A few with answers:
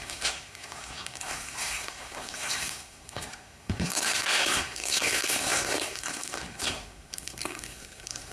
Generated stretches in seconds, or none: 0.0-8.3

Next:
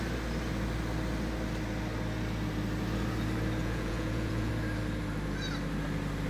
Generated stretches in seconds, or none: 3.6-4.5